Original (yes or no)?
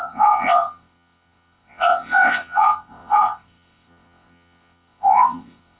no